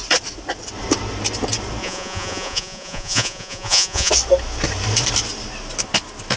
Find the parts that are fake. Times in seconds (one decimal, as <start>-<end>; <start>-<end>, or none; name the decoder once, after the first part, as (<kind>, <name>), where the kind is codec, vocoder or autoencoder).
1.8-4.1 (vocoder, Vocos)